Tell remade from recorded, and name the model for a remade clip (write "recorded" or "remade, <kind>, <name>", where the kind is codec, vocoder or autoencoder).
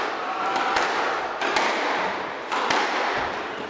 recorded